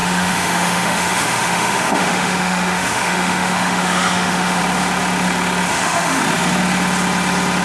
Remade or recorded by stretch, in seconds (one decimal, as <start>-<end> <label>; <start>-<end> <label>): 0.0-4.6 remade; 4.6-5.7 recorded; 5.7-6.2 remade; 6.2-7.6 recorded